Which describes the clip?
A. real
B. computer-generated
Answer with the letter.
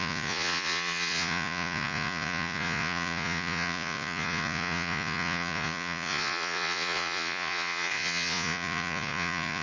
B